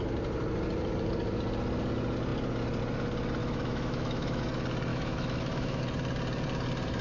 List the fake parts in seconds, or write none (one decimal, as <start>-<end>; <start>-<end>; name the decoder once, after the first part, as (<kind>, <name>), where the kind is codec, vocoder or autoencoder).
3.4-4.4 (autoencoder, DAC-VAE); 4.9-5.8